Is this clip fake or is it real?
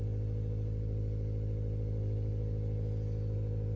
real